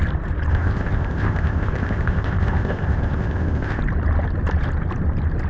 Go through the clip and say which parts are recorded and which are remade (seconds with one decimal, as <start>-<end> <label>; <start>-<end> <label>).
0.0-0.5 recorded; 0.5-3.8 remade; 3.8-5.5 recorded